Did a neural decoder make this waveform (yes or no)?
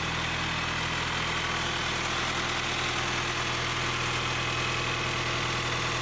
no